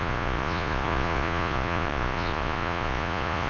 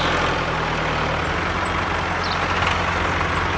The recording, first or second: second